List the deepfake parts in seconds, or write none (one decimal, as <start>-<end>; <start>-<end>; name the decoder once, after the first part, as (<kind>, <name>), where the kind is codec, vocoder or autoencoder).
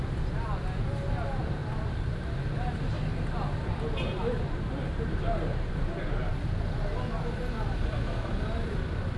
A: none